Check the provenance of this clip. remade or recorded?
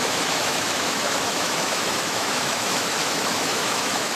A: remade